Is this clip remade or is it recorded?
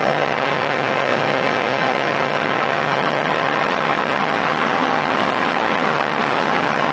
remade